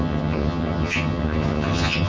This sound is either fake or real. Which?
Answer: fake